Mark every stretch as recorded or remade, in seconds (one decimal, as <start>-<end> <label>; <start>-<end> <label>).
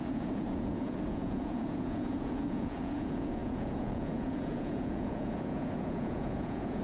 0.0-6.8 remade